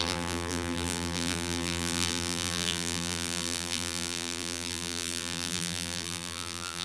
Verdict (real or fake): fake